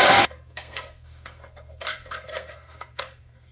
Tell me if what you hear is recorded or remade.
remade